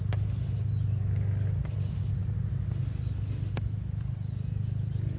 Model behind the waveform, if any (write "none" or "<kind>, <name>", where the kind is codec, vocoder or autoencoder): none